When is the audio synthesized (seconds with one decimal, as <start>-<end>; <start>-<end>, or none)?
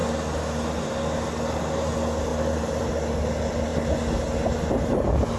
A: 2.3-2.9